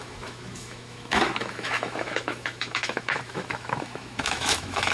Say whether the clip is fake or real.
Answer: fake